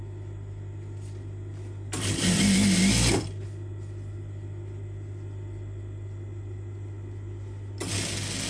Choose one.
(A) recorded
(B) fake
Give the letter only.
A